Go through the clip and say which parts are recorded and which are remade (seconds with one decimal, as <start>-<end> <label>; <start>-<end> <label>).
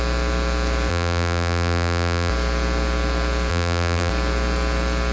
0.0-0.9 recorded; 0.9-2.3 remade; 2.3-3.5 recorded; 3.5-4.1 remade; 4.1-5.1 recorded